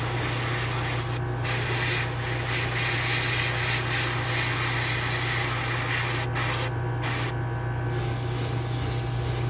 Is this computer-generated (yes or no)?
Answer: no